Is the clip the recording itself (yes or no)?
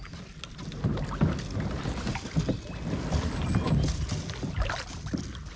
yes